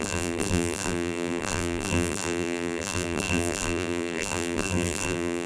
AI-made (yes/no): yes